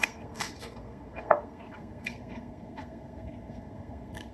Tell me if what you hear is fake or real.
fake